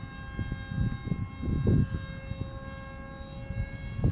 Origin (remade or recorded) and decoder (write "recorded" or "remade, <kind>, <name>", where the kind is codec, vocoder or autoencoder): recorded